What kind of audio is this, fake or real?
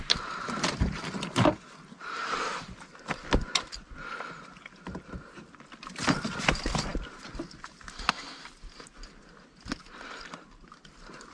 real